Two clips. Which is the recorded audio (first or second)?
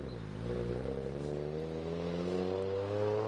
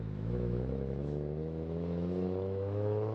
first